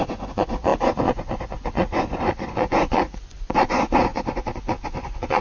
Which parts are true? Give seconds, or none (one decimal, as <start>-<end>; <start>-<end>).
none